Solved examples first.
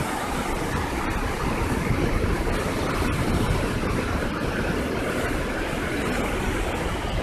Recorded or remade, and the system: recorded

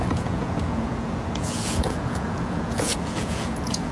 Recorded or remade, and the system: remade, vocoder, Vocos